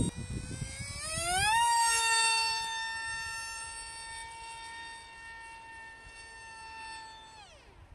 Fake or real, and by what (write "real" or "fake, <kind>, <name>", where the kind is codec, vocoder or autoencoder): real